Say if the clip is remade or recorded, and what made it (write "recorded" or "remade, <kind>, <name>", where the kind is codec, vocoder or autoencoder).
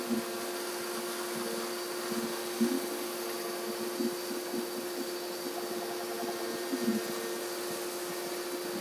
recorded